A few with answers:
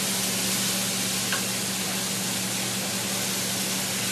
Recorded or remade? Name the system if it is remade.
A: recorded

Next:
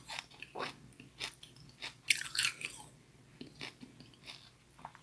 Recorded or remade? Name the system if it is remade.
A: recorded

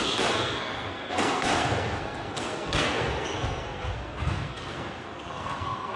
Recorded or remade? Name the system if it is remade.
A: remade, codec, SNAC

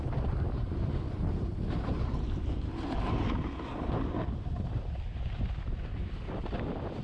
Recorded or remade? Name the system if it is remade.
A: recorded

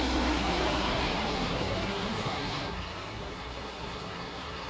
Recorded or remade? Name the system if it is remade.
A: remade, codec, SNAC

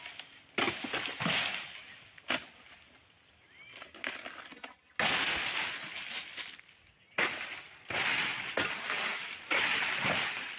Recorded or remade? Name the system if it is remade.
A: recorded